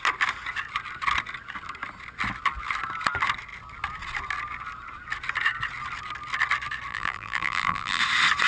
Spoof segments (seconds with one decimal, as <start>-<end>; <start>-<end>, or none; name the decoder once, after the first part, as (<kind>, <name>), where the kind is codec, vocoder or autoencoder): 6.9-8.0 (vocoder, BigVGAN v2)